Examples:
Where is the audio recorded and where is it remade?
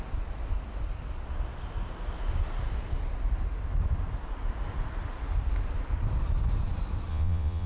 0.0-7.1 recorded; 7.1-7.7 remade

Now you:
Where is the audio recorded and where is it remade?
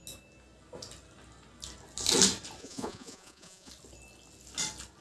0.0-2.6 recorded; 2.6-3.7 remade; 3.7-5.0 recorded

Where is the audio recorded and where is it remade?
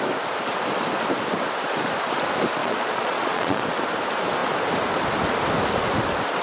0.0-2.6 recorded; 2.6-3.6 remade; 3.6-6.4 recorded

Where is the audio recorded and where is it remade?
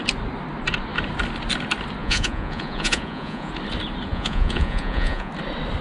0.0-2.0 recorded; 2.0-3.5 remade; 3.5-4.1 recorded; 4.1-5.3 remade; 5.3-5.8 recorded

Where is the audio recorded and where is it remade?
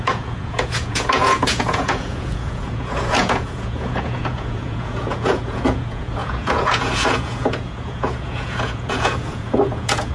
0.0-10.1 remade